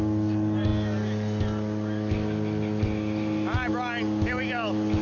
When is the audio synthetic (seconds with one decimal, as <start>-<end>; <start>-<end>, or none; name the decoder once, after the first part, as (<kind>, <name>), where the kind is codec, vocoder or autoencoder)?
none